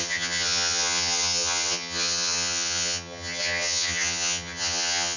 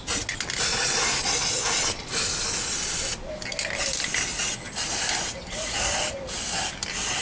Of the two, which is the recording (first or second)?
second